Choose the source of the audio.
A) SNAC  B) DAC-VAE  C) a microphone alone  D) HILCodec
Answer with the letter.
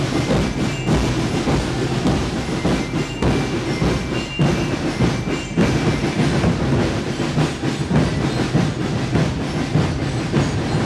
C